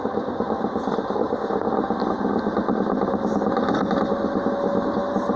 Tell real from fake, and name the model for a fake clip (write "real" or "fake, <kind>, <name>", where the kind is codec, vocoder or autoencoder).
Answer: real